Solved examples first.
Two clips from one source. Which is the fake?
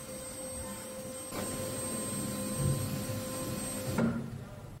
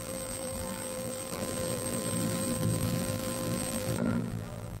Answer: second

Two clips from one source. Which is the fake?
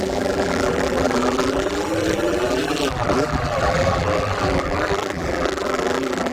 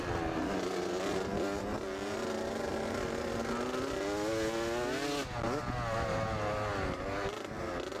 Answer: first